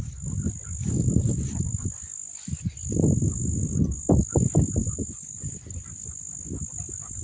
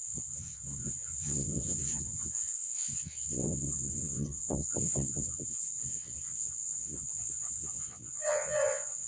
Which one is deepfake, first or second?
second